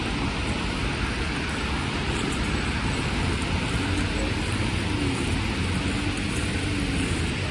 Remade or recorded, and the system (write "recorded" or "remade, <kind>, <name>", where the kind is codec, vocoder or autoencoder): recorded